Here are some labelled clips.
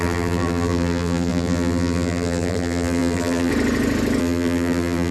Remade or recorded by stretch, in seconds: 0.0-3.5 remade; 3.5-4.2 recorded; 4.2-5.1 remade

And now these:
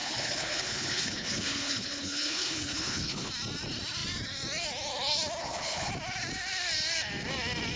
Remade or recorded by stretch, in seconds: 0.0-3.3 remade; 3.3-5.4 recorded; 5.4-5.9 remade; 5.9-7.8 recorded